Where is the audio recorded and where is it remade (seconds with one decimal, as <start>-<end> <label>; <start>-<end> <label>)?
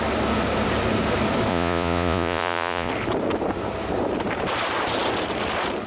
0.0-1.5 recorded; 1.5-2.9 remade; 2.9-5.9 recorded